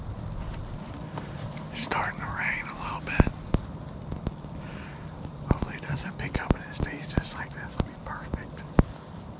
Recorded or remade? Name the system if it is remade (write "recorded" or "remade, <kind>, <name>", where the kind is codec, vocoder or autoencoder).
recorded